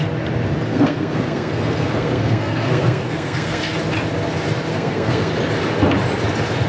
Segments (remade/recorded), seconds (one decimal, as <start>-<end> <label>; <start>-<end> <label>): 0.0-0.7 recorded; 0.7-3.6 remade; 3.6-4.7 recorded; 4.7-5.3 remade; 5.3-6.7 recorded